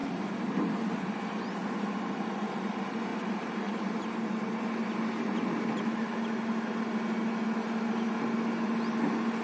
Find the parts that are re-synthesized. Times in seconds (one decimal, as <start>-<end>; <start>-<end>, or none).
0.0-1.8